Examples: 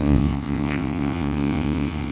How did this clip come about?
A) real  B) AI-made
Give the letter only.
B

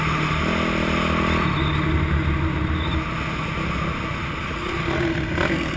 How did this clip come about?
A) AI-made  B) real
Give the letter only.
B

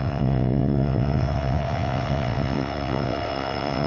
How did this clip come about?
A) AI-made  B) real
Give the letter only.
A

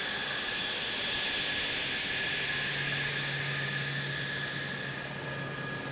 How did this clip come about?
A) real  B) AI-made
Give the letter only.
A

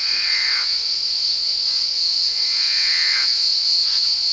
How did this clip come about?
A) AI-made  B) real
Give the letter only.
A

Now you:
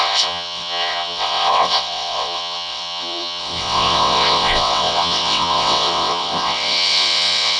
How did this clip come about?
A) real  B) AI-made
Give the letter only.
B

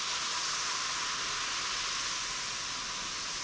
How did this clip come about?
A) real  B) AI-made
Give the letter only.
A